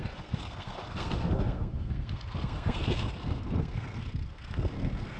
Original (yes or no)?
no